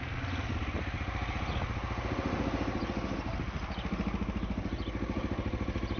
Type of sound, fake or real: real